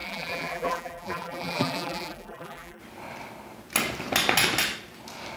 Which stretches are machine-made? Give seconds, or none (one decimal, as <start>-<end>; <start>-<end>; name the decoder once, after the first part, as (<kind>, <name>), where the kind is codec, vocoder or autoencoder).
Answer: 0.0-2.8 (vocoder, BigVGAN v2)